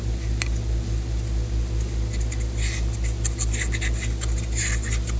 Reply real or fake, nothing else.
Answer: real